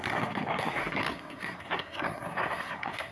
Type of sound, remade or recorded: remade